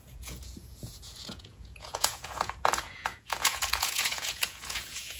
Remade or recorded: remade